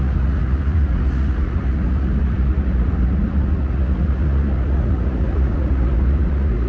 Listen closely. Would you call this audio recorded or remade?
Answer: remade